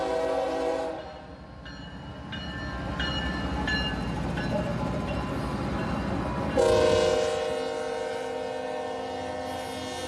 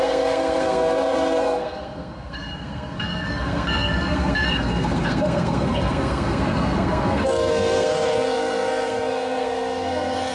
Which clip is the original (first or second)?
first